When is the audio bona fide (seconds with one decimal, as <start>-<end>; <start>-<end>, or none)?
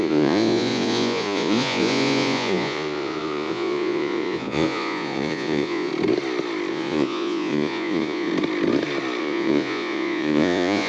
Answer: 5.9-6.7; 8.3-9.2